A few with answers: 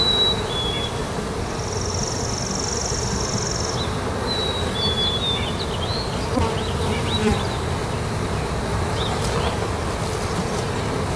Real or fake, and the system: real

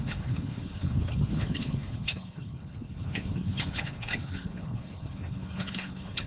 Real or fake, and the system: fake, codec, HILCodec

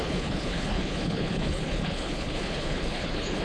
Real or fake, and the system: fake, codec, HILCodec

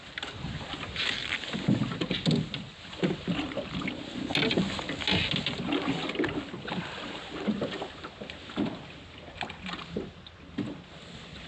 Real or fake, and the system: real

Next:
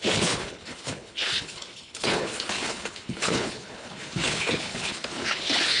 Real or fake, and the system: fake, codec, HILCodec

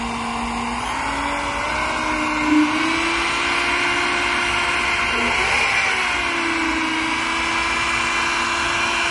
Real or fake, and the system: real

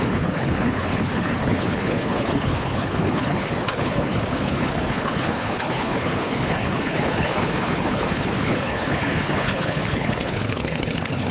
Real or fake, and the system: fake, codec, HILCodec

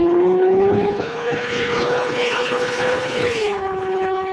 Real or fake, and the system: fake, codec, HILCodec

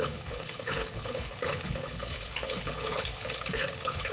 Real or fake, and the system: fake, codec, HILCodec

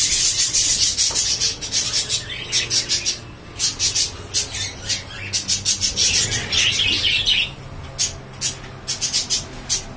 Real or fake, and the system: real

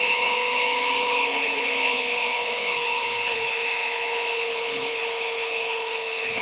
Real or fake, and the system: fake, codec, HILCodec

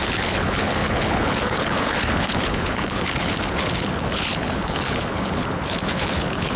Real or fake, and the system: fake, codec, HILCodec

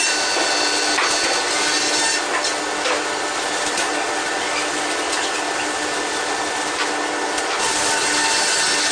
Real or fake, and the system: real